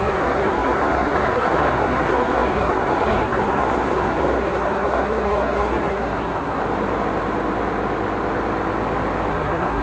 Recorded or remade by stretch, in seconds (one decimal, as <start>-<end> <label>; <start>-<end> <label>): 0.0-6.6 remade; 6.6-9.3 recorded; 9.3-9.8 remade